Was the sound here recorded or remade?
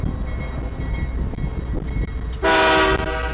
recorded